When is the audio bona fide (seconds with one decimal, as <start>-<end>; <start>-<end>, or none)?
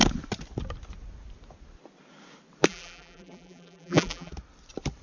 0.0-2.7; 4.3-5.0